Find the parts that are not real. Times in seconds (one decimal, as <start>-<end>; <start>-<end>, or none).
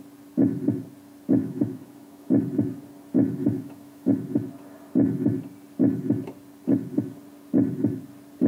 1.4-2.4; 3.4-4.1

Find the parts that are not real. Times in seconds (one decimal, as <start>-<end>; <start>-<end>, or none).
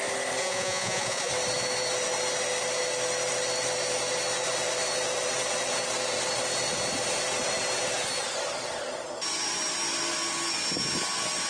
0.4-1.3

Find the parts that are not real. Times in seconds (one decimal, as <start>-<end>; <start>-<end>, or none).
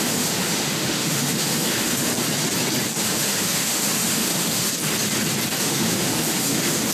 0.0-2.1; 3.0-4.7; 5.6-6.9